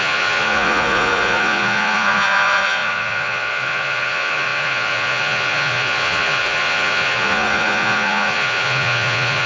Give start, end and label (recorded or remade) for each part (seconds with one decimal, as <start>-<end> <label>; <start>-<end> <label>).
0.0-9.5 remade